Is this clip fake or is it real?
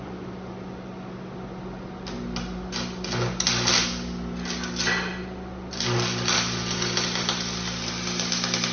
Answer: real